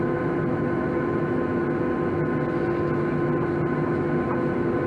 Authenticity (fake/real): real